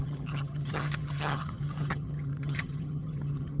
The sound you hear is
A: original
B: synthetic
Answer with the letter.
B